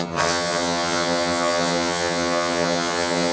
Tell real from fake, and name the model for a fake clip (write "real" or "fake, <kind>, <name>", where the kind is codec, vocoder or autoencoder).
fake, vocoder, HiFi-GAN